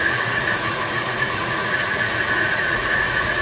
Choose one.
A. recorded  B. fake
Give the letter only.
B